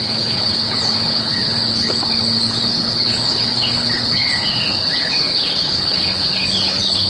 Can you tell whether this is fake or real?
fake